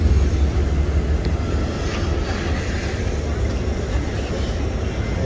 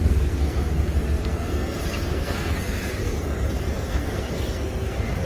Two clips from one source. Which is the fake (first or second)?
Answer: second